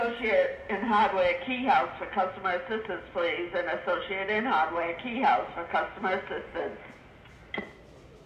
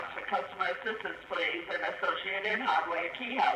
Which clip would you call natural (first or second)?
first